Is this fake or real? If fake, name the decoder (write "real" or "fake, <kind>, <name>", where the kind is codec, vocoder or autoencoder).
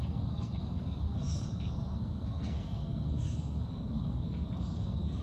fake, codec, SNAC